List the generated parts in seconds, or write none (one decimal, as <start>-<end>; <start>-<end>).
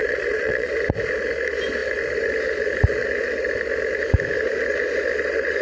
0.0-0.7